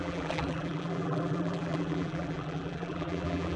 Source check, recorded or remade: remade